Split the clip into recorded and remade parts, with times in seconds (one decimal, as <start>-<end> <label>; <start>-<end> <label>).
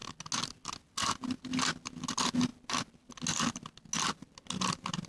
0.0-5.1 recorded